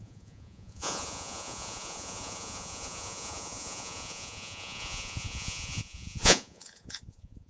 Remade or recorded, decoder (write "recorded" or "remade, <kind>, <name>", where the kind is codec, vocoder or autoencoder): remade, vocoder, Vocos